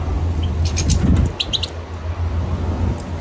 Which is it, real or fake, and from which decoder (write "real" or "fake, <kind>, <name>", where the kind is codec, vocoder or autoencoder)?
real